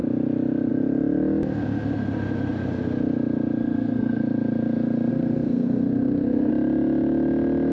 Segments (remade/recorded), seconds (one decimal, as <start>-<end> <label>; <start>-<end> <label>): 0.0-3.6 recorded; 3.6-4.2 remade; 4.2-5.1 recorded; 5.1-6.5 remade; 6.5-7.7 recorded